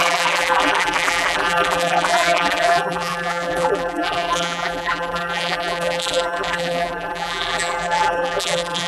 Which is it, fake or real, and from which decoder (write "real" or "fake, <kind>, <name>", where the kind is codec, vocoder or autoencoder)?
fake, vocoder, BigVGAN v2